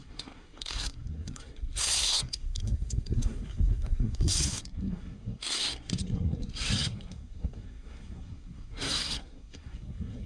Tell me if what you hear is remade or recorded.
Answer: remade